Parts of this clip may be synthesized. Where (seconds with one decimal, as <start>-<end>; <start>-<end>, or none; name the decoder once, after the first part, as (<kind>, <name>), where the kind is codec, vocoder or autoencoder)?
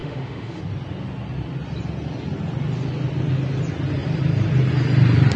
0.0-0.6 (autoencoder, DAC-VAE)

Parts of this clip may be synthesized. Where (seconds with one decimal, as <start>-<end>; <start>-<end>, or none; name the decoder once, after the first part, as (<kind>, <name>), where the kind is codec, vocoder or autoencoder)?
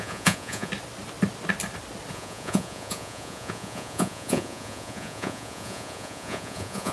0.0-0.7 (vocoder, Vocos); 2.1-6.9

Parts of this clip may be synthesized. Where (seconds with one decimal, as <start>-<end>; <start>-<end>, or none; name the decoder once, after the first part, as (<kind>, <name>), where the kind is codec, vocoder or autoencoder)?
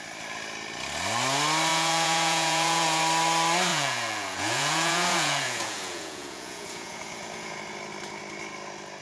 1.7-3.0 (vocoder, Vocos); 3.7-7.6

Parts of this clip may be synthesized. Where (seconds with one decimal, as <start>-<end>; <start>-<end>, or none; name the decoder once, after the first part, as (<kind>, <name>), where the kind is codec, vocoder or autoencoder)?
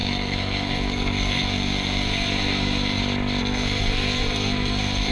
0.0-3.0 (codec, SNAC); 3.4-5.1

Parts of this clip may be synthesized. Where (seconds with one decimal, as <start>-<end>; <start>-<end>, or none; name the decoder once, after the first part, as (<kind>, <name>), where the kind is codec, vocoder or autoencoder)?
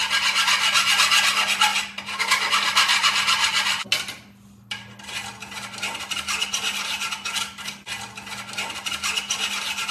none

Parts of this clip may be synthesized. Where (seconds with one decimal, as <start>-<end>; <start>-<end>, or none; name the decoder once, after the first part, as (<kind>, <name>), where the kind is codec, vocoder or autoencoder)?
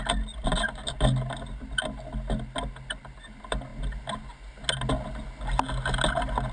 none